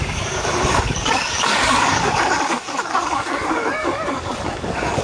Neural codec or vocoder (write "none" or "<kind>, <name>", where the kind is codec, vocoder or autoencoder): codec, DAC